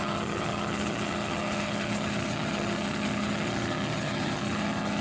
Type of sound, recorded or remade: remade